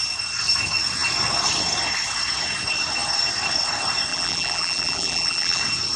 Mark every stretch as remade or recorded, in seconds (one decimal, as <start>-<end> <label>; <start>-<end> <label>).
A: 0.0-4.1 recorded; 4.1-5.6 remade; 5.6-6.0 recorded